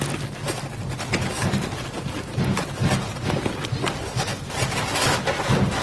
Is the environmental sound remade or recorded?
recorded